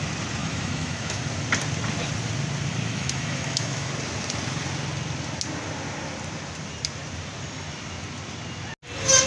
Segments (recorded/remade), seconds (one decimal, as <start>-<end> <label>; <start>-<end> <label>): 0.0-0.4 recorded; 0.4-1.2 remade; 1.2-2.9 recorded; 2.9-3.9 remade; 3.9-9.3 recorded